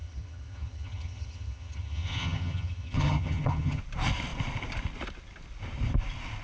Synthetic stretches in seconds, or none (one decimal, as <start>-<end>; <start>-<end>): 0.0-3.8

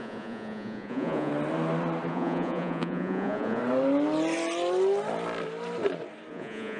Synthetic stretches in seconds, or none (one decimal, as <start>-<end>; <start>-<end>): 0.0-1.3; 2.1-3.6; 6.3-6.8